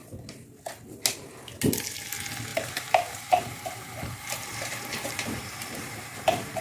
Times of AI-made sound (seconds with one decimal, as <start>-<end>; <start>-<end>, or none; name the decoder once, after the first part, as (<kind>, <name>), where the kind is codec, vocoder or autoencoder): 2.5-6.6 (vocoder, BigVGAN v2)